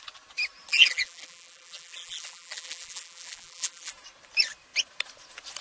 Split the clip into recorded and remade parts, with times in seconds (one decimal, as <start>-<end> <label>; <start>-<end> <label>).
0.0-0.7 recorded; 0.7-3.9 remade; 3.9-5.6 recorded